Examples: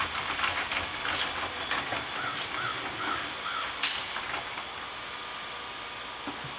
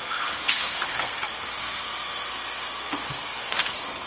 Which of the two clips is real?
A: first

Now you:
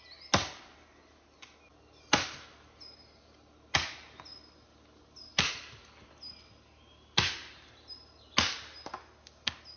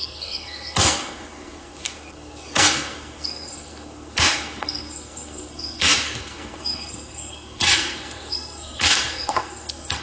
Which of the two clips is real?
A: first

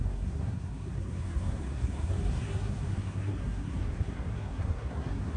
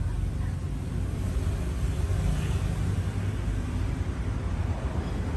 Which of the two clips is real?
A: second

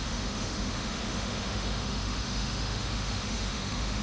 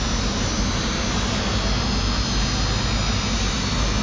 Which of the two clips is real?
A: second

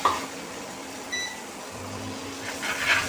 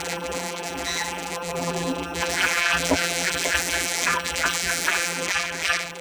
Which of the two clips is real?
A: first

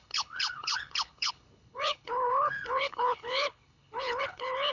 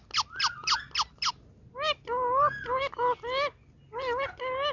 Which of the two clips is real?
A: second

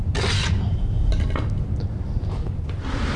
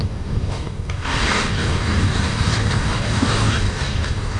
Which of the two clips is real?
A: first